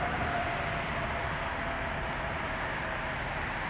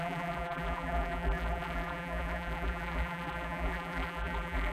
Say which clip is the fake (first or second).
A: second